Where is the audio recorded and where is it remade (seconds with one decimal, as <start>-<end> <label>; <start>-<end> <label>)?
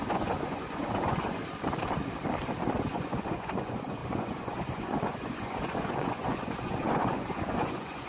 0.0-1.4 remade; 1.4-2.9 recorded; 2.9-8.1 remade